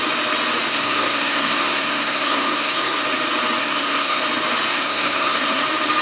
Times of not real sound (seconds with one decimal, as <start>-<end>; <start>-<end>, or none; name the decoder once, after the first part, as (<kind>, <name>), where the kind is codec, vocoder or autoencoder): 0.7-3.0 (codec, SNAC); 3.6-4.2; 4.7-5.6